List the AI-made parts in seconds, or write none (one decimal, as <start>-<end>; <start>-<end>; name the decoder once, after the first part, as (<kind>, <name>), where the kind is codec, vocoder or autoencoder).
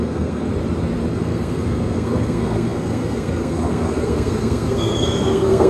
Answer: 0.0-0.5 (codec, SNAC); 1.1-5.7